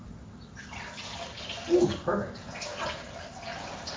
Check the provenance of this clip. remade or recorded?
recorded